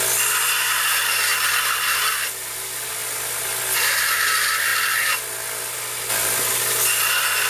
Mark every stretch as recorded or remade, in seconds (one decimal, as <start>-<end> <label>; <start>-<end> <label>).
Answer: 0.0-7.5 recorded